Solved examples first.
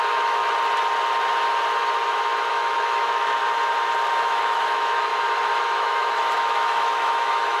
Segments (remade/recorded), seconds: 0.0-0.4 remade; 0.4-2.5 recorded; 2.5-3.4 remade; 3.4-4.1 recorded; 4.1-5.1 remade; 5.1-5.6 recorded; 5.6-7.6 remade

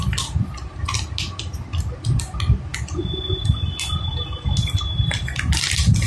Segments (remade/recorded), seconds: 0.0-6.1 recorded